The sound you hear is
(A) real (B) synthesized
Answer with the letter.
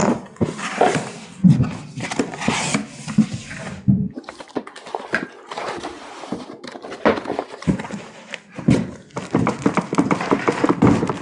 A